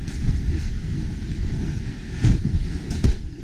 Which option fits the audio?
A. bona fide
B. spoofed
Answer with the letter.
B